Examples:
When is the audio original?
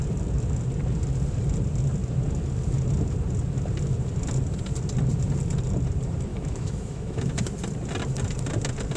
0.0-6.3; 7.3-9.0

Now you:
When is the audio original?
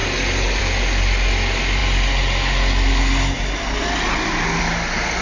0.0-5.2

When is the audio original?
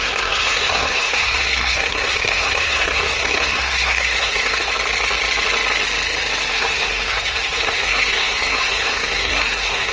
4.7-6.5